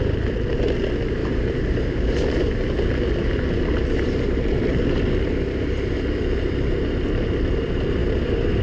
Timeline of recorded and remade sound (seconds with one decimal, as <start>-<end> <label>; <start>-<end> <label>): 0.0-1.2 recorded; 1.2-2.5 remade; 2.5-8.0 recorded; 8.0-8.6 remade